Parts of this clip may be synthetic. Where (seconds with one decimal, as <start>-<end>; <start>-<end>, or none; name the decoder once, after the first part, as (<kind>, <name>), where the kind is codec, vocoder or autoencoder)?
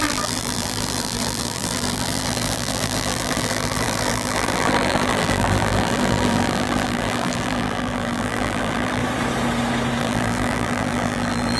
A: 0.0-9.0 (vocoder, BigVGAN v2); 10.0-11.6